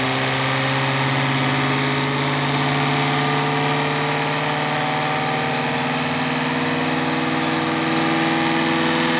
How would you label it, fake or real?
real